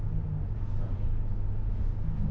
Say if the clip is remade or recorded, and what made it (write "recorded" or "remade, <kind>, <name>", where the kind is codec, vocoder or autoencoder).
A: remade, vocoder, Vocos